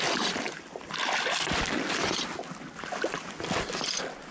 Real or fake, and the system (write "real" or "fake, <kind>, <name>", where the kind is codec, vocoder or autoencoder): real